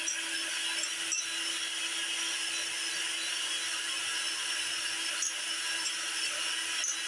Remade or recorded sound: recorded